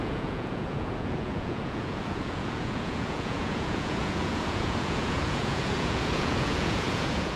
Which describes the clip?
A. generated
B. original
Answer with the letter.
A